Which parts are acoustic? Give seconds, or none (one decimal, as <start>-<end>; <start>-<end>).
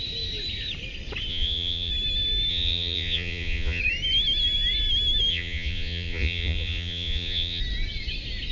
0.0-1.3; 1.9-2.5; 3.8-5.3; 7.6-8.5